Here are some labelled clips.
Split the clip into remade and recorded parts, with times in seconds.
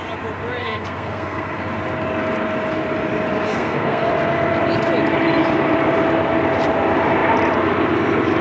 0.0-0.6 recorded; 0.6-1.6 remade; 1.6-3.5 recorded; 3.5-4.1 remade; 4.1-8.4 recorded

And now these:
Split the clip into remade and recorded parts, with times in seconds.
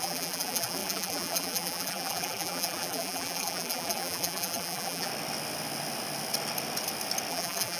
0.0-5.1 remade; 5.1-7.3 recorded; 7.3-7.8 remade